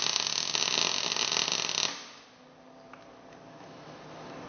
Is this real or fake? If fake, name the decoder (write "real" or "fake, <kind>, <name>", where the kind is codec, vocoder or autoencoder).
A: real